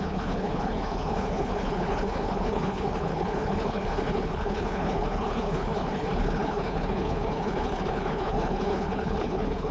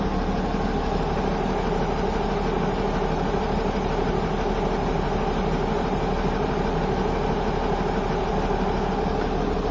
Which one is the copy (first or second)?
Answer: first